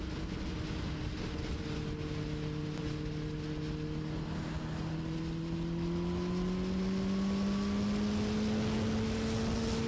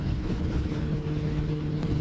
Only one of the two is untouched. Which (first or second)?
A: first